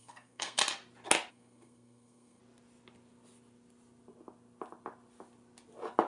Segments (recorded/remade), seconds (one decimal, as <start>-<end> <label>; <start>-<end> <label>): 0.0-0.6 remade; 0.6-1.3 recorded; 1.3-2.4 remade; 2.4-6.1 recorded